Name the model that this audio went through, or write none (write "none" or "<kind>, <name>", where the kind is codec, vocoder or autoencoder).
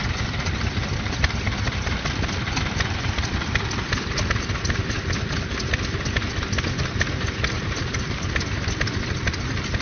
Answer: none